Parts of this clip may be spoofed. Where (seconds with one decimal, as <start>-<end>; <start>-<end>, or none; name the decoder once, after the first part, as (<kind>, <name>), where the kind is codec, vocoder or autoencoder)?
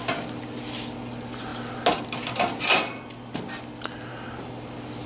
none